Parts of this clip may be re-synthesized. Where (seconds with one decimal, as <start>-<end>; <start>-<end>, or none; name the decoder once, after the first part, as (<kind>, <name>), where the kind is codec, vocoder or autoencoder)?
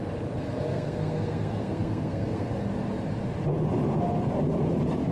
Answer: 0.7-2.5 (codec, SNAC)